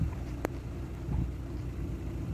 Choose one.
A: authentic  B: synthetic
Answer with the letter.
A